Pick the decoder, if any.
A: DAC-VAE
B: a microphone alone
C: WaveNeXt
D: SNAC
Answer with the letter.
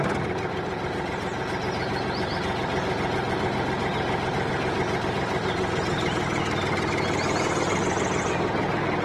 B